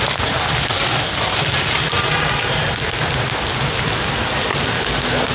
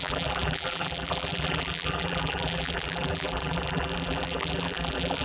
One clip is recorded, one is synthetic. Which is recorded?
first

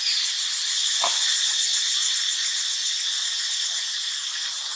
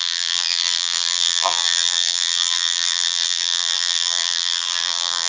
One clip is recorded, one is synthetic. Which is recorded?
first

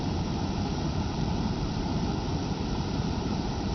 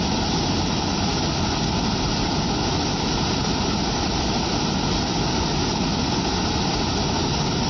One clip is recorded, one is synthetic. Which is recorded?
second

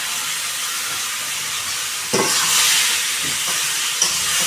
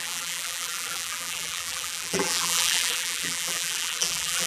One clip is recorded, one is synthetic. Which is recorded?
first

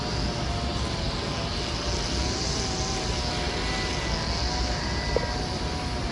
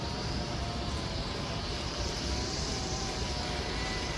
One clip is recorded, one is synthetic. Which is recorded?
first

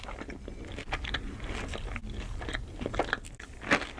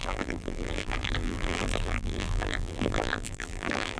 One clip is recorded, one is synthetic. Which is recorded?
first